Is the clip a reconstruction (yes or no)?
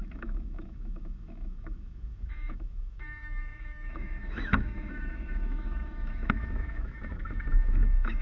yes